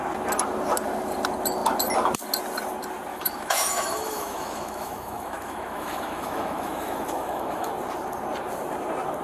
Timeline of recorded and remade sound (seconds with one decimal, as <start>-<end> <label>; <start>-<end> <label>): 0.0-3.1 recorded; 3.1-7.7 remade; 7.7-9.2 recorded